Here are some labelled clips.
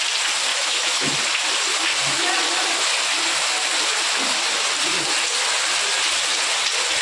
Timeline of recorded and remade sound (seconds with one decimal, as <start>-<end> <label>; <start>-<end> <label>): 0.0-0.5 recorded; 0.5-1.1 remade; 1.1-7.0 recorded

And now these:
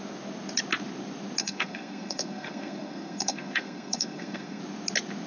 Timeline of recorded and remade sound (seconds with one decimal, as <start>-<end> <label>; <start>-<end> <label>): 0.0-1.4 recorded; 1.4-4.6 remade; 4.6-5.3 recorded

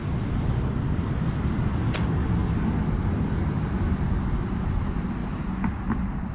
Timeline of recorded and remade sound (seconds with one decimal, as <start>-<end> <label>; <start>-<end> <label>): 0.0-1.8 remade; 1.8-2.4 recorded; 2.4-4.5 remade; 4.5-5.2 recorded; 5.2-5.7 remade; 5.7-6.3 recorded